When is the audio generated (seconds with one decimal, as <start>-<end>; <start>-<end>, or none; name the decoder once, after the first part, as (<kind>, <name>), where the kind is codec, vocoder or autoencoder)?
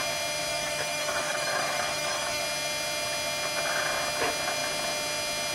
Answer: 0.5-2.4 (autoencoder, DAC-VAE)